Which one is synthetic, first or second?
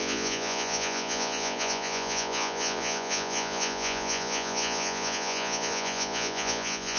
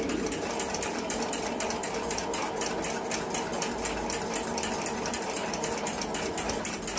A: first